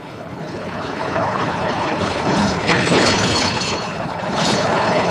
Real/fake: fake